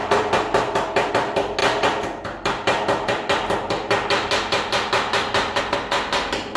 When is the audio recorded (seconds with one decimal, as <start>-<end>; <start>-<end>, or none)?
0.0-6.6